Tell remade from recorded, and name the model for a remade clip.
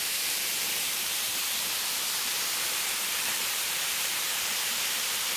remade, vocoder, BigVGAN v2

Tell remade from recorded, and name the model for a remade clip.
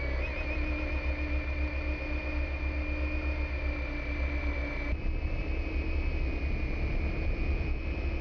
recorded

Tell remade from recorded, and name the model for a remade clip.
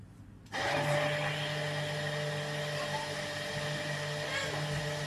recorded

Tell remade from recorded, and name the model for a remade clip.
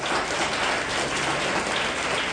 recorded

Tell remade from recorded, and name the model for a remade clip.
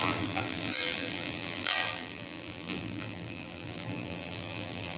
remade, vocoder, BigVGAN v2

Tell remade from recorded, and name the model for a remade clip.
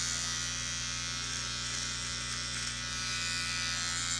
remade, vocoder, BigVGAN v2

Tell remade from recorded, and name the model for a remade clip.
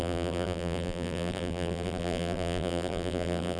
remade, vocoder, BigVGAN v2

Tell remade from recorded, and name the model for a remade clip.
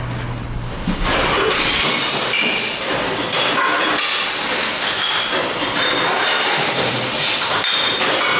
recorded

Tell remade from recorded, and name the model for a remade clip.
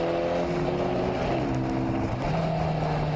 recorded